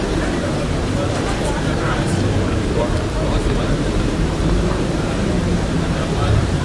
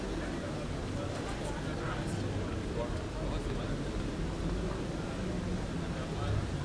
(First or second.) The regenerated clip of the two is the first